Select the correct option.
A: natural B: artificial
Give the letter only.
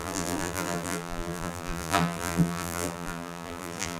B